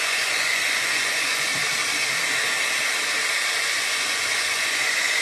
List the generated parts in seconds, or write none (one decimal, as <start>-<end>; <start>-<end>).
0.0-1.5; 3.6-5.2